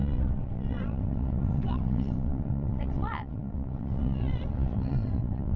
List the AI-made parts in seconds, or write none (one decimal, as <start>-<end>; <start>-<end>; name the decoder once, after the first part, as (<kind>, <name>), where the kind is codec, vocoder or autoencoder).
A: 0.0-5.6 (vocoder, WaveNeXt)